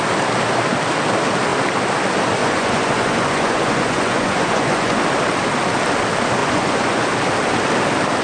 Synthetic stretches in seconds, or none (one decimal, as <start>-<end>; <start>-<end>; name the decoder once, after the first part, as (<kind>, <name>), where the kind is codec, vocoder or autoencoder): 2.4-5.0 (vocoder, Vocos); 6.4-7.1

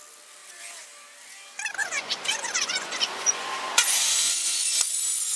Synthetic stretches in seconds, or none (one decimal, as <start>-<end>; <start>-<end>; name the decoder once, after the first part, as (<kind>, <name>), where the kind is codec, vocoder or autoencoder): 1.8-5.0 (vocoder, Vocos)

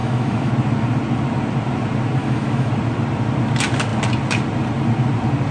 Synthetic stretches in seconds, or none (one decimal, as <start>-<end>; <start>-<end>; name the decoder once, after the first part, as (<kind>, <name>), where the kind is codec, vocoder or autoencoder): 0.0-0.5 (autoencoder, DAC-VAE); 2.2-2.7

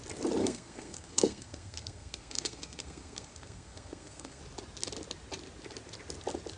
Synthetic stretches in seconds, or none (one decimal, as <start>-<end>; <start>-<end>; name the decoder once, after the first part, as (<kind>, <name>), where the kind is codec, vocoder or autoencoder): 0.4-4.4 (codec, SNAC)

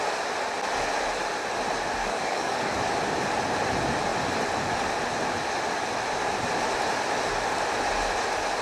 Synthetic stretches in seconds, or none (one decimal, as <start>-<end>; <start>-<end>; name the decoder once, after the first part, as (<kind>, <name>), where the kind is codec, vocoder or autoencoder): 2.0-2.8 (codec, DAC)

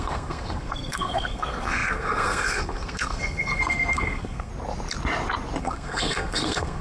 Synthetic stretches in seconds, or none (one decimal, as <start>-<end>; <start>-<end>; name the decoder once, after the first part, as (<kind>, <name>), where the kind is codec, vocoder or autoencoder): 0.0-4.5 (codec, SNAC); 5.6-6.8

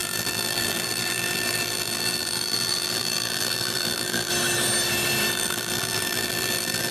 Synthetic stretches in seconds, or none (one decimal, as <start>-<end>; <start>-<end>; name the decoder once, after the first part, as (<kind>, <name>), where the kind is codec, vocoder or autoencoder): 0.0-4.3 (vocoder, BigVGAN v2); 5.3-6.9

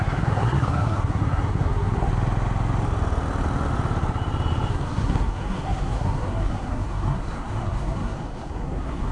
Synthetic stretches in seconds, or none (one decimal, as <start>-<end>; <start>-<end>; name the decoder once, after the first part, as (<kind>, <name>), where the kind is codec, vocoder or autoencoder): 0.0-2.1 (codec, SNAC); 4.7-9.1